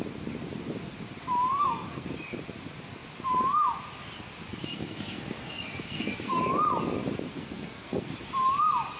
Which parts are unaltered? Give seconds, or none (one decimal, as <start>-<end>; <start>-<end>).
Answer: 0.0-1.5; 2.1-4.5; 6.4-7.3; 8.1-9.0

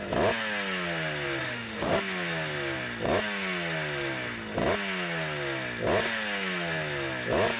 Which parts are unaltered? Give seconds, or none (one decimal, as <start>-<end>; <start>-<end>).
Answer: 0.0-1.4; 2.0-7.6